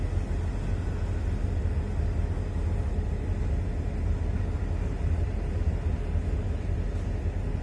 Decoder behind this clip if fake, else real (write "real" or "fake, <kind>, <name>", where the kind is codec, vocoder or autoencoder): real